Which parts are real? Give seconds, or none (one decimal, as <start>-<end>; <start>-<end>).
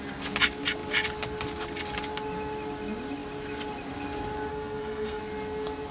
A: 0.0-4.5; 5.2-5.9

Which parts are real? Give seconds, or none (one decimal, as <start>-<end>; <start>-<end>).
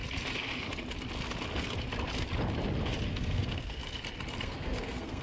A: 0.0-3.1; 3.8-4.4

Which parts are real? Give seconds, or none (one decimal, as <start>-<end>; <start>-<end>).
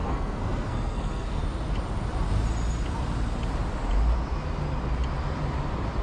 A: 1.4-6.0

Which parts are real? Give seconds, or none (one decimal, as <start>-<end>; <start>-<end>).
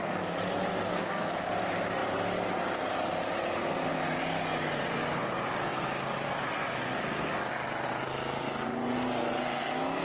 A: 0.0-0.7; 1.3-10.0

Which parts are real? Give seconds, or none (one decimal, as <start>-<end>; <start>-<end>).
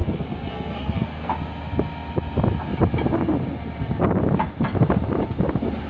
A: 1.3-5.9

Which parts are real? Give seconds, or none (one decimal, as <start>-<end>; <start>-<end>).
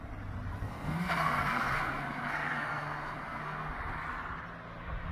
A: 0.0-0.6; 3.7-5.1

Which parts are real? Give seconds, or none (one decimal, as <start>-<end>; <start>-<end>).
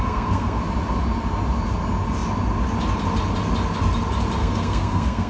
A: 0.6-4.4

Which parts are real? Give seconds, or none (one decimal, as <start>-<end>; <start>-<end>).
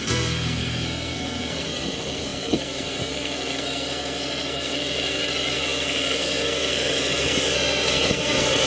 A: none